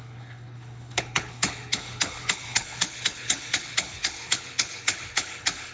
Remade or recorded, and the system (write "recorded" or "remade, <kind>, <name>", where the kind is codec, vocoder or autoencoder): remade, codec, HILCodec